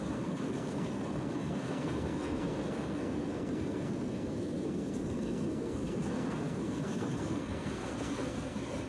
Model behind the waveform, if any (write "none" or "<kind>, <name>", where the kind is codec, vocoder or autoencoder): codec, SNAC